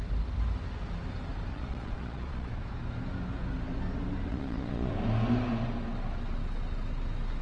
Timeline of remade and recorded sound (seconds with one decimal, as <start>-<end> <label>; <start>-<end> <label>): 0.0-1.5 recorded; 1.5-2.5 remade; 2.5-4.3 recorded; 4.3-4.9 remade; 4.9-7.4 recorded